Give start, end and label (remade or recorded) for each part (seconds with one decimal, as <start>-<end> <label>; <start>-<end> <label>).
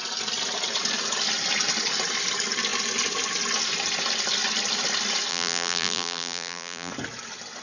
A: 0.0-5.3 recorded; 5.3-6.9 remade; 6.9-7.6 recorded